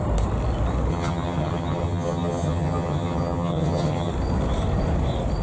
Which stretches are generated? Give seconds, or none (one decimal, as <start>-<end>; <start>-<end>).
0.9-4.1